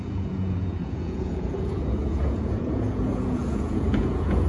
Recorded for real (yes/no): no